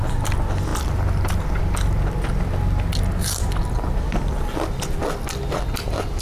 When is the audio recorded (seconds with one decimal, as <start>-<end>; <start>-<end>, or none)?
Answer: 0.0-6.2